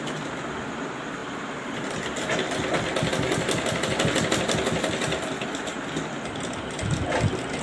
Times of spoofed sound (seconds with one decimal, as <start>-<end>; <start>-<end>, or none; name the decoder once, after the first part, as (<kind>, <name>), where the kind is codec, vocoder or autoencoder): none